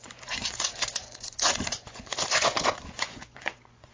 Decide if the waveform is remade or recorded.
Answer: remade